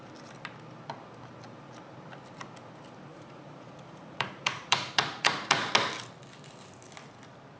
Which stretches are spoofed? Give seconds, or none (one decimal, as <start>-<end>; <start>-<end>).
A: 3.1-5.7